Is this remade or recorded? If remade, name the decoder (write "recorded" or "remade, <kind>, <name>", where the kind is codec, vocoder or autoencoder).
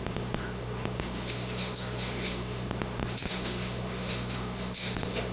remade, autoencoder, DAC-VAE